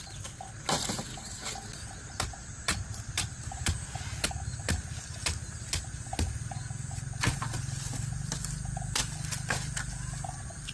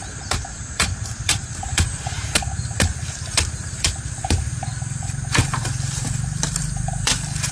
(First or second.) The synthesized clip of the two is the second